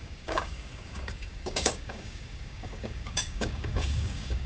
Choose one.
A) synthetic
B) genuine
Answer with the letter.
A